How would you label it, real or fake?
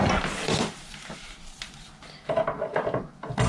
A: real